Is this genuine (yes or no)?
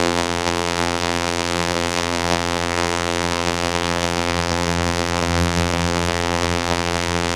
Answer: no